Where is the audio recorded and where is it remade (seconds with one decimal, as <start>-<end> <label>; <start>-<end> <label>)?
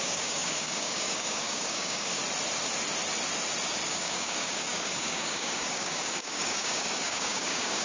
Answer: 0.0-2.2 remade; 2.2-3.9 recorded; 3.9-7.8 remade